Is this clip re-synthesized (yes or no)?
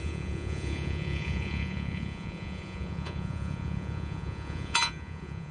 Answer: yes